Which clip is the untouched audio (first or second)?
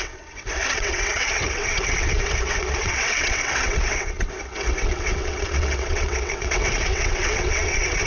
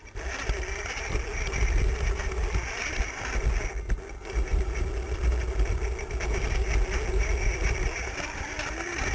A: second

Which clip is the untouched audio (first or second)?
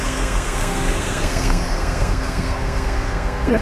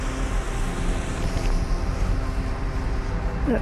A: second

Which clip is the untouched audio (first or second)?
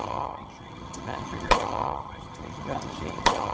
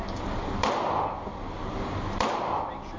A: second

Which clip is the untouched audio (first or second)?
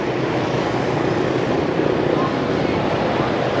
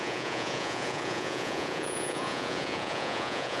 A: first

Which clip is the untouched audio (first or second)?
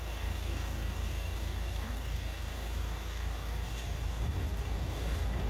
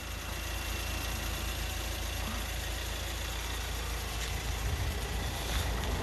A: second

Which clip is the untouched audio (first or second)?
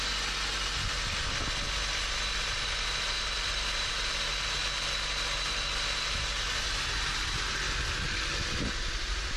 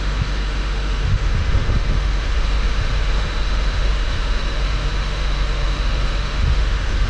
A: first